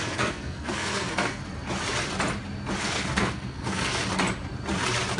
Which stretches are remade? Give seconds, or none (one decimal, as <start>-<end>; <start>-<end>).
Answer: 0.0-1.4; 2.8-4.0